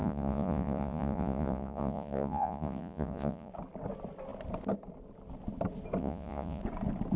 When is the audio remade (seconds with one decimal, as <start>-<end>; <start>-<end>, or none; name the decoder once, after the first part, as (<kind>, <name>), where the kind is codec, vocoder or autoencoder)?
0.0-3.5 (vocoder, Vocos); 6.0-6.6